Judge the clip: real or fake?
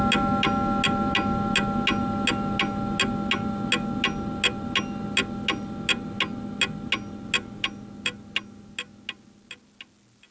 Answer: real